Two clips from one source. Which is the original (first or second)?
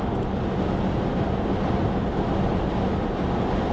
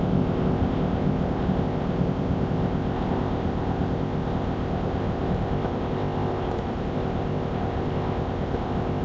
first